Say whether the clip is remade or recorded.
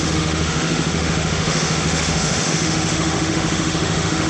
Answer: remade